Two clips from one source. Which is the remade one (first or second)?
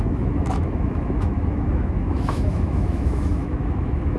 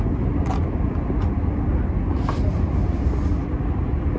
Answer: first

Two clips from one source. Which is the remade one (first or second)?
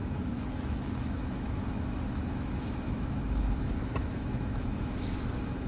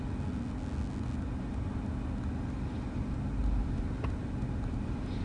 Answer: first